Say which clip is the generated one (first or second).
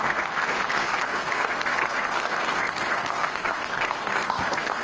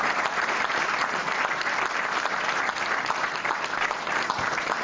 first